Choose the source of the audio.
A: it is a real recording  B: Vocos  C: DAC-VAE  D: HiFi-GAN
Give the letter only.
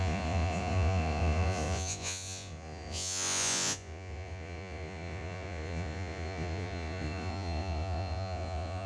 B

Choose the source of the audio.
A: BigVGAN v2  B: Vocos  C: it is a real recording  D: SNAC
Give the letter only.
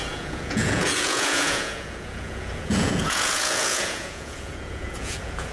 B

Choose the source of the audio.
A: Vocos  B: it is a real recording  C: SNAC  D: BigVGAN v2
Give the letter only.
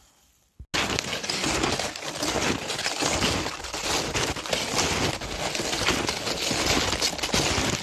B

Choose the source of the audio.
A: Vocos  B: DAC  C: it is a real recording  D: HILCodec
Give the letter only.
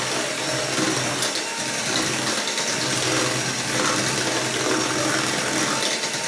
C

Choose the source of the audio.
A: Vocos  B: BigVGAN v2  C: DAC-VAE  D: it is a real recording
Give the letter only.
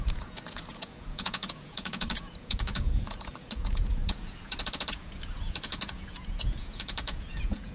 A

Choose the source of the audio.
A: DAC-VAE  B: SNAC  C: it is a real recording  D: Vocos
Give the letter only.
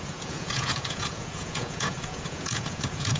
D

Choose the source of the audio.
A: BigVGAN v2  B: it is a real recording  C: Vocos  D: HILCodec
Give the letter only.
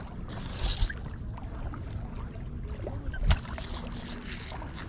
B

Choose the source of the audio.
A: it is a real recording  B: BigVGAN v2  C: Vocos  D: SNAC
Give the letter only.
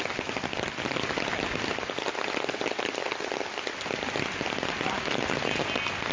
A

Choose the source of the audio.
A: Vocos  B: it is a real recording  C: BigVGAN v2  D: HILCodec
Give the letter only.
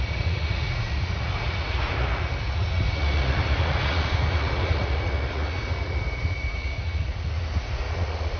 A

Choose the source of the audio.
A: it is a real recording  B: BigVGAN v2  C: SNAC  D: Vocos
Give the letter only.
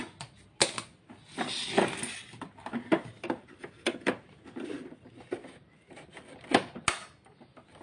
A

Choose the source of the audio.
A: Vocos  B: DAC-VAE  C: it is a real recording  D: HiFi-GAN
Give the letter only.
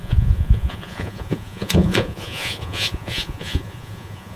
A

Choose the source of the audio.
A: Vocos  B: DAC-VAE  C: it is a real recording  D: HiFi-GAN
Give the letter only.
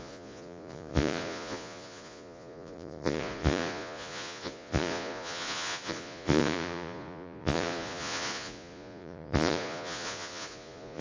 A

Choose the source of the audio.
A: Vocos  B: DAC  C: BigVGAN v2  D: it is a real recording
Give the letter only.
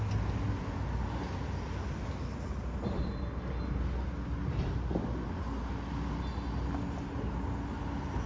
D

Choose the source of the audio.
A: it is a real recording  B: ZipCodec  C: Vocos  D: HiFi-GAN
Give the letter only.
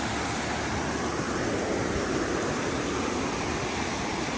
A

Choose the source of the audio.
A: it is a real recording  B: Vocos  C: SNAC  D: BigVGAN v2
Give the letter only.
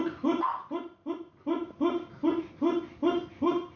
A